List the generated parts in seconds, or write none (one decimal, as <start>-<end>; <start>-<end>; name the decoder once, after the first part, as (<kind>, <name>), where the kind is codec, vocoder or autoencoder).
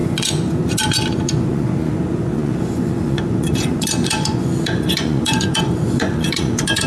0.0-6.9 (vocoder, Vocos)